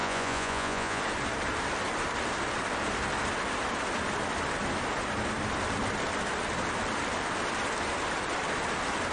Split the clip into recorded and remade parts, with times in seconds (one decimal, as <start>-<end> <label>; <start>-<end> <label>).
0.0-1.0 remade; 1.0-9.1 recorded